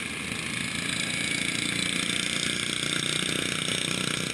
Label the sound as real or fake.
real